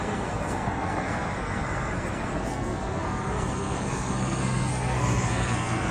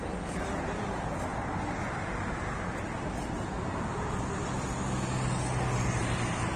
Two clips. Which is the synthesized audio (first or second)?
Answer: first